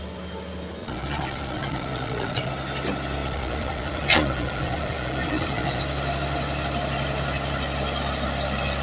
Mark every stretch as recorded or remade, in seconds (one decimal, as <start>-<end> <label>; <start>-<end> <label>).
0.0-0.8 recorded; 0.8-2.5 remade; 2.5-3.2 recorded; 3.2-5.8 remade; 5.8-8.8 recorded